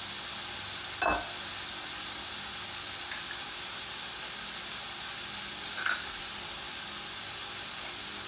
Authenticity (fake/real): real